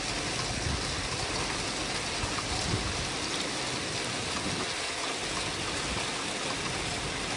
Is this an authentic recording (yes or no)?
yes